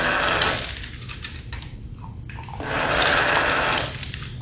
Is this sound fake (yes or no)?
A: no